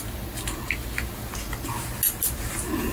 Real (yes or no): yes